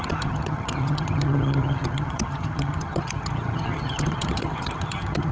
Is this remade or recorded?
remade